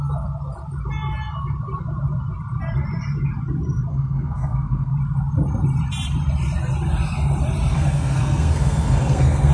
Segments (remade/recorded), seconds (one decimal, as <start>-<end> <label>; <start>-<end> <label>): 0.0-3.9 recorded; 3.9-4.9 remade; 4.9-7.7 recorded; 7.7-9.5 remade